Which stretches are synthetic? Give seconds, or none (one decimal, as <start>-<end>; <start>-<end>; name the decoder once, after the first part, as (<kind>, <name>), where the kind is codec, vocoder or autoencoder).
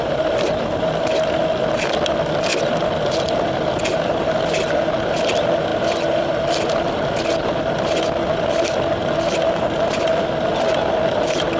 none